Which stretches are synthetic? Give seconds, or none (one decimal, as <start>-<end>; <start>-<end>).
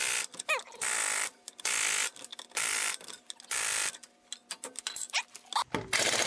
none